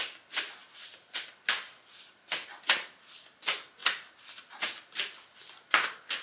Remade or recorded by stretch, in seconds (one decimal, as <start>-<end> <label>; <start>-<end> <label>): 0.0-6.2 recorded